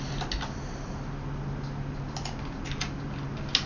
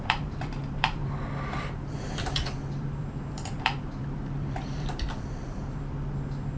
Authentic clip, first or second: first